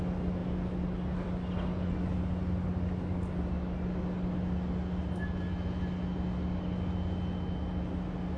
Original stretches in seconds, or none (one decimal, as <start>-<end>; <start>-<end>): 0.0-8.4